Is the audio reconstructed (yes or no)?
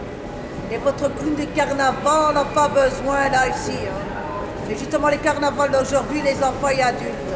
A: no